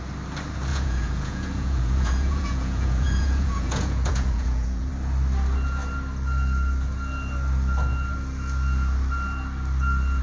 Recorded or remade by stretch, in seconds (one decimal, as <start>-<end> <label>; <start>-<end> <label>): 0.0-0.7 recorded; 0.7-4.9 remade; 4.9-10.2 recorded